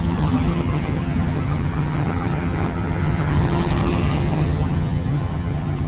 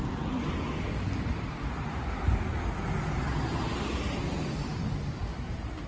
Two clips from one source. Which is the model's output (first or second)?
first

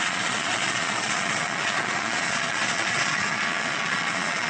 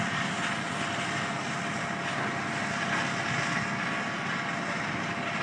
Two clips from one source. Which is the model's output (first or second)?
first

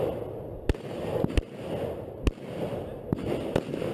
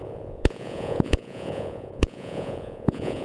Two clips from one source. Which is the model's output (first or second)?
second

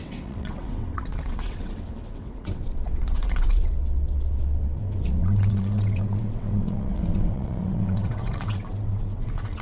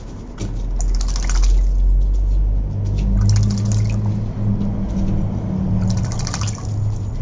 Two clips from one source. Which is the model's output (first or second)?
first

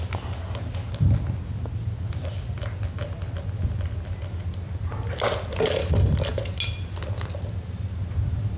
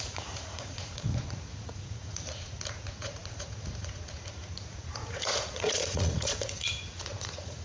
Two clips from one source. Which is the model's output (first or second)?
second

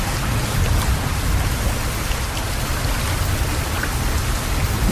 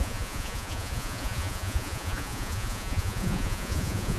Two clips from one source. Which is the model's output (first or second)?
second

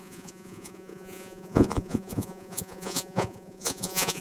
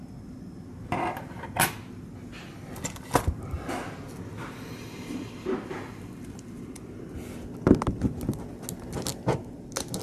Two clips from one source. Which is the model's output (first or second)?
first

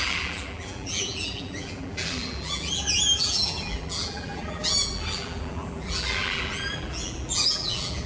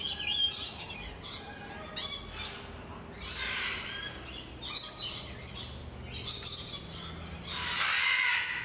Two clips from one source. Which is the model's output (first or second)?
first